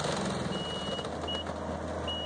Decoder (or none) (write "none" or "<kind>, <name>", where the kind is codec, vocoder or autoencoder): none